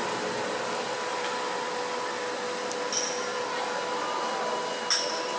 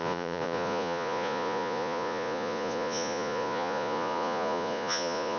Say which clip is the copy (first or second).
second